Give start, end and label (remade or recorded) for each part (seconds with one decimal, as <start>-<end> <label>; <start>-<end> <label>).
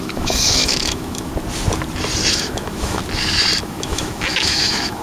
0.0-1.3 remade; 1.3-2.3 recorded; 2.3-3.0 remade; 3.0-3.6 recorded; 3.6-5.0 remade